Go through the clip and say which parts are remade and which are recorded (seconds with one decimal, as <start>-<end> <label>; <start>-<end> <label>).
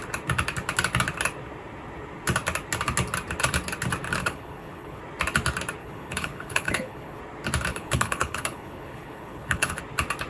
0.0-4.2 recorded; 4.2-5.0 remade; 5.0-5.8 recorded; 5.8-7.2 remade; 7.2-7.7 recorded; 7.7-9.8 remade; 9.8-10.3 recorded